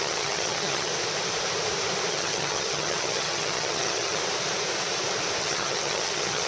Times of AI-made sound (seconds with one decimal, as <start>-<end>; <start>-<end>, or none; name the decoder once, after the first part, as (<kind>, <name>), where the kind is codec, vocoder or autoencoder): 0.0-0.9 (vocoder, HiFi-GAN); 2.1-4.2; 5.4-6.5